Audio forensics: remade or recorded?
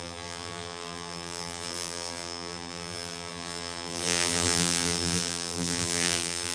remade